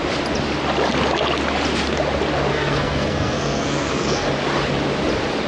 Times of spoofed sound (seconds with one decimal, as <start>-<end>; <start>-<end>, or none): 2.5-4.3